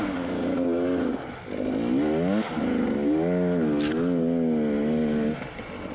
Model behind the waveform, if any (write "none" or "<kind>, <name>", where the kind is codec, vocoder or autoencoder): none